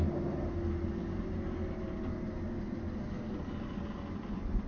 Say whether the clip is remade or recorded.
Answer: recorded